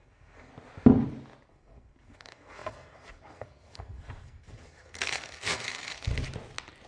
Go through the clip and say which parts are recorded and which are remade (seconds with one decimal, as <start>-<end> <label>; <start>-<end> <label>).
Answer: 0.0-0.5 remade; 0.5-1.5 recorded; 1.5-6.1 remade; 6.1-6.9 recorded